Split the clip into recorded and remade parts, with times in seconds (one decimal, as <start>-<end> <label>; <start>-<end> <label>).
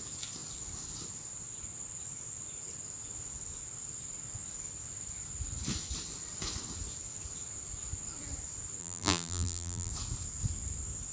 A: 0.0-8.8 recorded; 8.8-9.9 remade; 9.9-11.1 recorded